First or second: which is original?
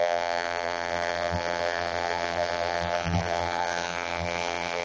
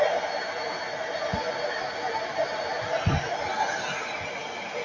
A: second